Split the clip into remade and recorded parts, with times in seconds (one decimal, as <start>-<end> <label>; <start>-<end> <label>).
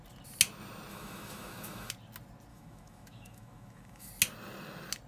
0.0-0.9 recorded; 0.9-1.9 remade; 1.9-2.5 recorded; 2.5-4.1 remade; 4.1-5.1 recorded